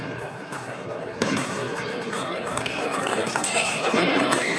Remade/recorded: remade